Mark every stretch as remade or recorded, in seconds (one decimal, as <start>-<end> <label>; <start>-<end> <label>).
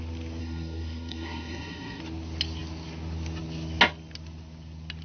0.0-0.4 recorded; 0.4-2.0 remade; 2.0-5.0 recorded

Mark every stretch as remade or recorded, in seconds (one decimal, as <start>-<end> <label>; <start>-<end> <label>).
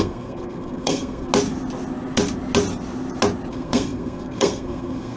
0.0-1.3 remade; 1.3-3.5 recorded; 3.5-5.2 remade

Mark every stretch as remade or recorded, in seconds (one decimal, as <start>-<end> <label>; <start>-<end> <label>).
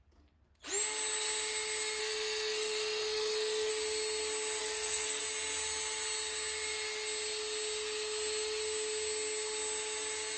0.0-2.0 recorded; 2.0-3.7 remade; 3.7-4.6 recorded; 4.6-5.2 remade; 5.2-10.4 recorded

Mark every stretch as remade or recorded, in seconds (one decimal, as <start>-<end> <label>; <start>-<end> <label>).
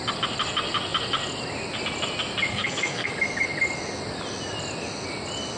0.0-2.5 recorded; 2.5-3.1 remade; 3.1-5.6 recorded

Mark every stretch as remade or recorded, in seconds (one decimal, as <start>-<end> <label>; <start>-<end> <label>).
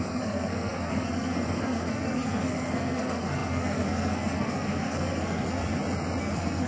0.0-5.6 remade; 5.6-6.2 recorded; 6.2-6.7 remade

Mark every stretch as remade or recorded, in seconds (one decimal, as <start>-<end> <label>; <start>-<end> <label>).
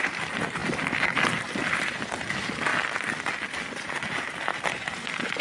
0.0-5.4 recorded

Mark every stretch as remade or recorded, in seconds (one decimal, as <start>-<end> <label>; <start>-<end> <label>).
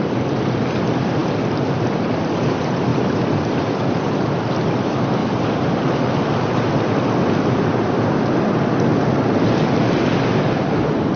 0.0-11.2 recorded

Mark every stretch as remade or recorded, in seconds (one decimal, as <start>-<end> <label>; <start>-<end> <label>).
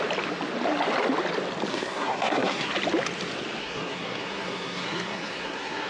0.0-1.7 recorded; 1.7-2.7 remade; 2.7-3.6 recorded; 3.6-5.9 remade